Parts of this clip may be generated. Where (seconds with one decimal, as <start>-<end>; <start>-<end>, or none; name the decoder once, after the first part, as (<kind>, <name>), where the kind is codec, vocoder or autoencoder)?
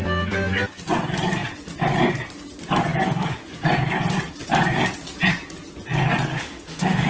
6.3-7.1 (autoencoder, DAC-VAE)